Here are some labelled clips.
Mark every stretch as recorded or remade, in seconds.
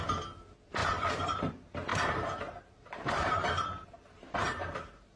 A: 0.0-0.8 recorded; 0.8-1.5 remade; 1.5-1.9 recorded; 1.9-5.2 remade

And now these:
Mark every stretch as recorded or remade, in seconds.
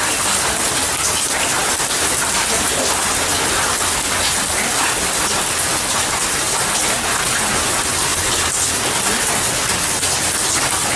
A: 0.0-1.6 recorded; 1.6-2.2 remade; 2.2-11.0 recorded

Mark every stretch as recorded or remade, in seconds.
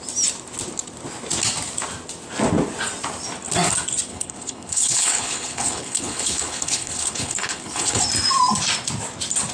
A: 0.0-4.1 recorded; 4.1-8.0 remade; 8.0-9.5 recorded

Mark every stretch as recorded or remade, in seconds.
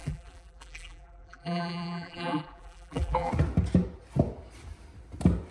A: 0.0-3.3 remade; 3.3-5.5 recorded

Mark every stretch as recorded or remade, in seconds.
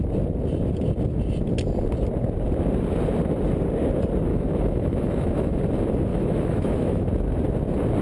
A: 0.0-4.3 recorded; 4.3-5.6 remade; 5.6-6.1 recorded; 6.1-7.1 remade; 7.1-8.0 recorded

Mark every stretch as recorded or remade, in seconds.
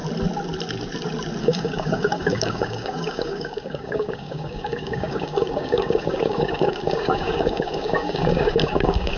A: 0.0-1.4 recorded; 1.4-9.2 remade